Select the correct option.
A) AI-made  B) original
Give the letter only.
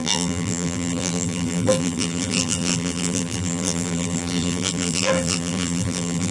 A